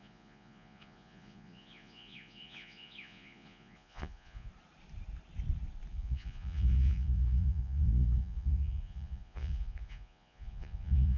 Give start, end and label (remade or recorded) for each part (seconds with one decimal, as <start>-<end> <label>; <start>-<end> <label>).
0.0-4.5 remade; 4.5-5.9 recorded; 5.9-11.2 remade